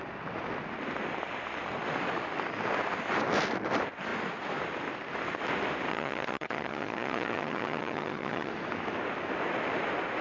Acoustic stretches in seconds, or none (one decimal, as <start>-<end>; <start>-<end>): 0.0-5.9; 8.5-10.2